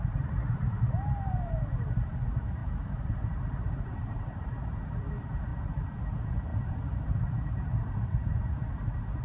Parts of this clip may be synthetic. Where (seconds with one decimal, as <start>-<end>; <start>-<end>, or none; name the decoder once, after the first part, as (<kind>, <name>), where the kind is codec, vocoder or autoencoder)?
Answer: 0.0-9.2 (vocoder, BigVGAN v2)